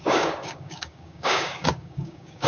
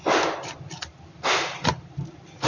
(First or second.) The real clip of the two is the second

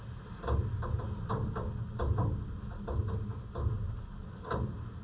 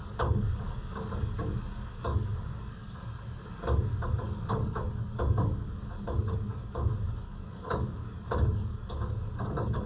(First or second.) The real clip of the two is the first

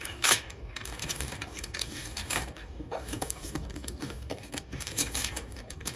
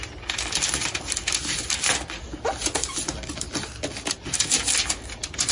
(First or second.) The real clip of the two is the second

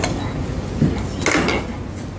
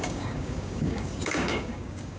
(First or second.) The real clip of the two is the first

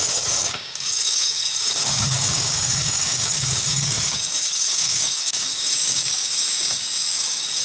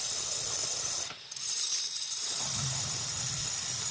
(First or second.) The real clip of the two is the second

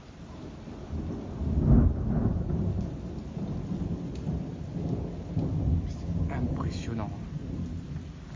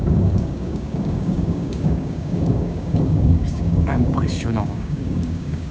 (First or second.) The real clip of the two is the first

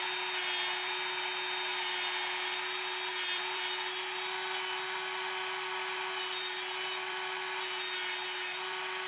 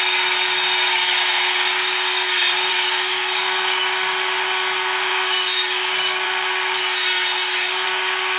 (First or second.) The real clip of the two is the first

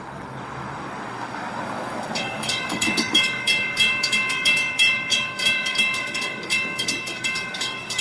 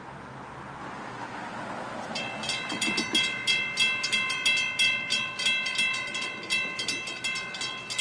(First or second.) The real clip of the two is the second